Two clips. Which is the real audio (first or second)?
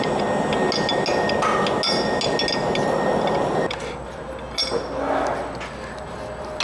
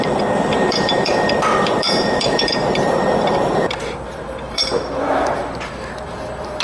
first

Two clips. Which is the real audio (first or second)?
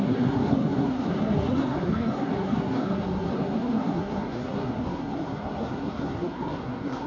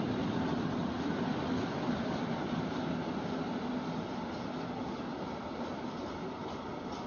second